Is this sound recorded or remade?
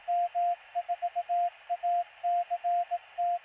recorded